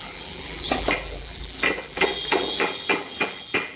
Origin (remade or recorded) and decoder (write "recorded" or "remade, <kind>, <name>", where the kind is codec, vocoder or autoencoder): remade, vocoder, BigVGAN v2